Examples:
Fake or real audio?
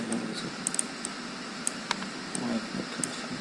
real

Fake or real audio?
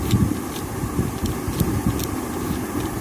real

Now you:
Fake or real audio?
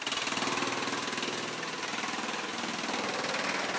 real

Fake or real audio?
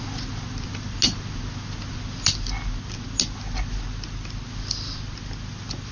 real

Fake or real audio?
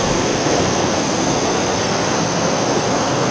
fake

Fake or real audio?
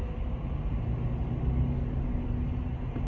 real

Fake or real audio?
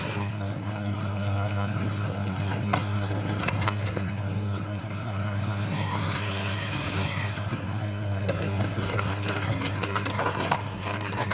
fake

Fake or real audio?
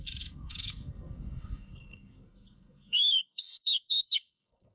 fake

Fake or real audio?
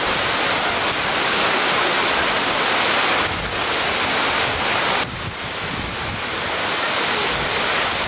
real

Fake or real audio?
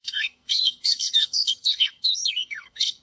fake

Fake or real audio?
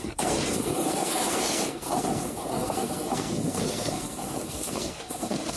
fake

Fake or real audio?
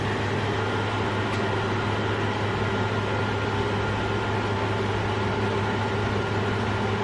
real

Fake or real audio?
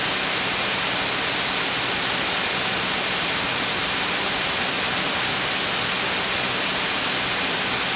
real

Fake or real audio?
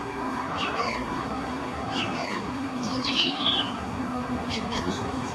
fake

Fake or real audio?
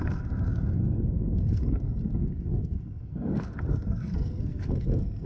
fake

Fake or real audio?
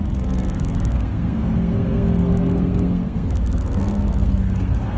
fake